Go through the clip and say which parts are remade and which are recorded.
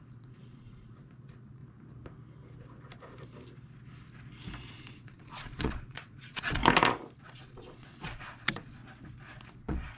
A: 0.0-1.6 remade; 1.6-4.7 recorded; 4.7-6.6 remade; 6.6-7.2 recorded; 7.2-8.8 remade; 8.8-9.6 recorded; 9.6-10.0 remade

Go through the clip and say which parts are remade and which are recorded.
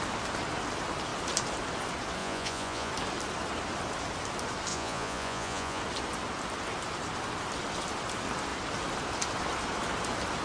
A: 0.0-2.2 recorded; 2.2-2.9 remade; 2.9-4.7 recorded; 4.7-5.8 remade; 5.8-10.4 recorded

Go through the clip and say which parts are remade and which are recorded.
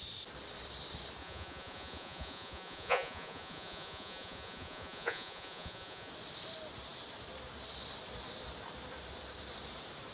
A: 0.0-1.2 recorded; 1.2-6.1 remade; 6.1-10.1 recorded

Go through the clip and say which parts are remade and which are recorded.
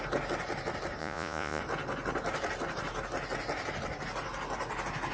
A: 0.0-1.0 recorded; 1.0-1.6 remade; 1.6-5.1 recorded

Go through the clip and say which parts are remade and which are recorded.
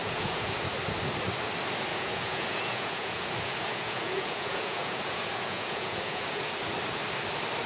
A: 0.0-0.7 remade; 0.7-1.9 recorded; 1.9-6.5 remade; 6.5-7.7 recorded